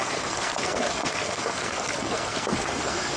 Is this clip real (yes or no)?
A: no